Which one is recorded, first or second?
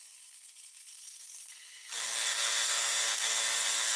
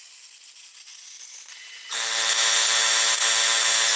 second